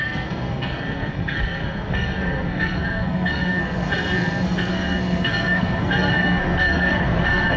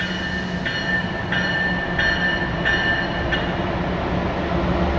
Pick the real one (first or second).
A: second